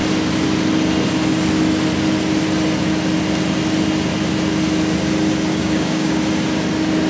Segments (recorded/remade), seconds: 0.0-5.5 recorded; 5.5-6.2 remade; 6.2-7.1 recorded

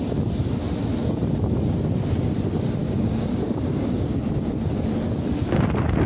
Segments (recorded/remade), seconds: 0.0-2.8 recorded; 2.8-4.4 remade; 4.4-6.1 recorded

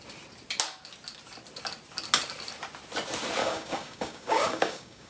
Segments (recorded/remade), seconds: 0.0-3.4 recorded; 3.4-5.1 remade

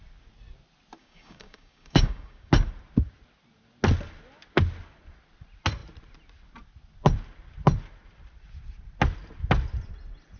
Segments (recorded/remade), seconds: 0.0-1.0 recorded; 1.0-2.5 remade; 2.5-10.4 recorded

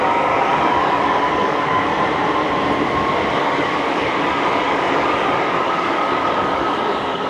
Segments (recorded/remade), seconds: 0.0-1.9 remade; 1.9-3.3 recorded; 3.3-7.3 remade